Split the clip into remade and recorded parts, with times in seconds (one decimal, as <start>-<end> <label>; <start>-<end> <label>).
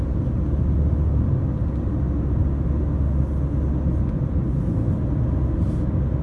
0.0-6.2 recorded